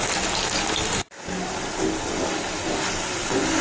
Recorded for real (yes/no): yes